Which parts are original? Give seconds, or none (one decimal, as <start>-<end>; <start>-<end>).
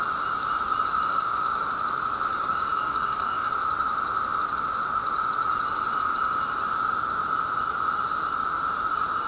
0.0-1.1; 1.6-2.3; 3.5-9.3